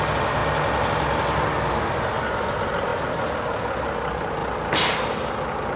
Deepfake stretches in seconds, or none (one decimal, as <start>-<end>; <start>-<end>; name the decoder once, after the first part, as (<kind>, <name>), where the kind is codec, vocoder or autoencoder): none

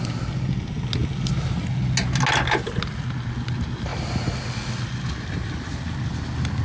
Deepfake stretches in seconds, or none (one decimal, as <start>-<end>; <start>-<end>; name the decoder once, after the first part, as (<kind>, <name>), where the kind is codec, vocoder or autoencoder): none

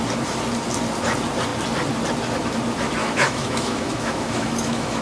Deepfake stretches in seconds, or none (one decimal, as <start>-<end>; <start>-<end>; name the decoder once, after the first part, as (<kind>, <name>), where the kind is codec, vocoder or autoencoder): 3.0-5.0 (autoencoder, DAC-VAE)

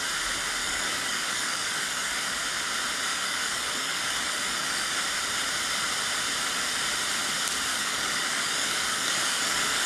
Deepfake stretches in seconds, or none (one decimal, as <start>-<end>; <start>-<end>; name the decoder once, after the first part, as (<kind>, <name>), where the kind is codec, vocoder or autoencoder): 0.6-2.4 (codec, DAC); 3.1-5.0; 7.7-9.9

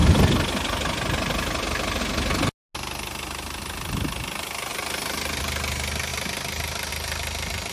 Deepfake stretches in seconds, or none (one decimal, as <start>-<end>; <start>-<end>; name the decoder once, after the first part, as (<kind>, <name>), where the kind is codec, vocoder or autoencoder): none

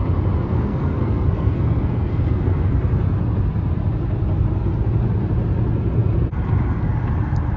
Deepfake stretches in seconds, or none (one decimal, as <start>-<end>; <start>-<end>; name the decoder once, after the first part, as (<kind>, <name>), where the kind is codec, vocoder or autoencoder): 0.5-2.7 (codec, SNAC)

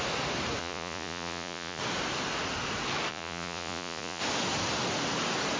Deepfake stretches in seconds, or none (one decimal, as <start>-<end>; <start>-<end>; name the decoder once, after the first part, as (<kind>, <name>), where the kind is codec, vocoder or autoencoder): 0.6-1.8 (vocoder, Vocos); 3.1-4.2